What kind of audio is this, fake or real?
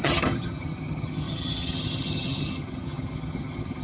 fake